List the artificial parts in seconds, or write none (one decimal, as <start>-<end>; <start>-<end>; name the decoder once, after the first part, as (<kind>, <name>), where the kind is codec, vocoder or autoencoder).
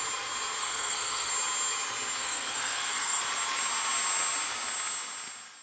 0.6-1.3 (codec, SNAC); 2.2-3.2